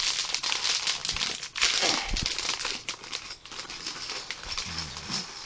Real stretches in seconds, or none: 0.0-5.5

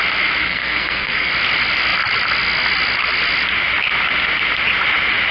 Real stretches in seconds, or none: 0.0-0.4; 1.3-5.3

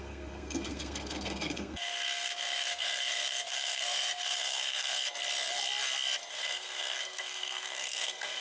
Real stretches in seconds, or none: 5.0-6.3

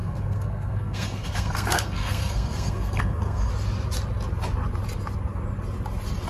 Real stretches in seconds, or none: 3.5-6.3

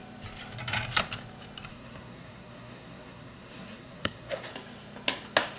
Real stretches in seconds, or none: 0.0-1.7; 4.5-5.6

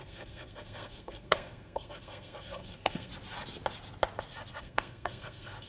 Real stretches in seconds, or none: 3.1-4.6

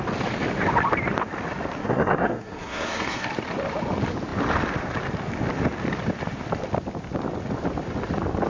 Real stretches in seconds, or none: 0.0-1.8; 3.3-8.5

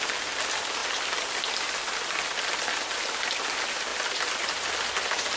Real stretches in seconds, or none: 0.0-5.4